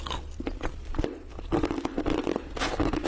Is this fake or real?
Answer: real